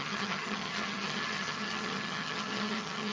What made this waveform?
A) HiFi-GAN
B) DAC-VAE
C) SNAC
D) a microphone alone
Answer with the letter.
A